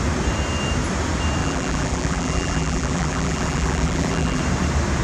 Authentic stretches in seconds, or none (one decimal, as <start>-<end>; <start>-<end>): 0.0-1.4; 4.4-5.0